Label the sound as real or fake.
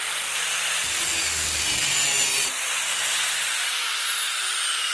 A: fake